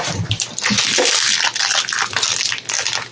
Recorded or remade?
recorded